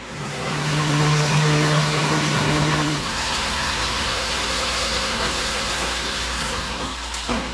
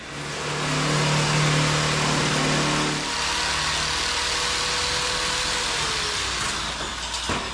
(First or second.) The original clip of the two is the second